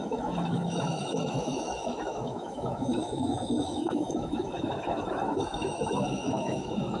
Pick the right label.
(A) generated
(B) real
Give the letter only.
A